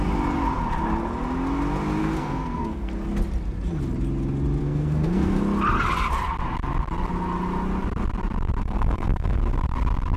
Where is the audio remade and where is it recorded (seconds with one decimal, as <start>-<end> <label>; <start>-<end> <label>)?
0.0-2.0 recorded; 2.0-2.9 remade; 2.9-4.6 recorded; 4.6-5.4 remade; 5.4-8.6 recorded; 8.6-9.4 remade; 9.4-10.2 recorded

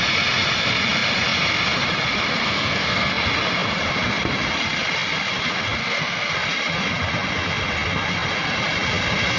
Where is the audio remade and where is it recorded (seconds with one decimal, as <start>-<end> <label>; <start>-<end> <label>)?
0.0-2.4 recorded; 2.4-3.1 remade; 3.1-5.8 recorded; 5.8-6.3 remade; 6.3-9.4 recorded

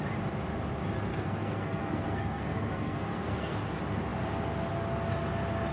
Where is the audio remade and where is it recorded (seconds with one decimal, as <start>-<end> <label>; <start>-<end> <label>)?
0.0-1.1 recorded; 1.1-3.6 remade; 3.6-5.7 recorded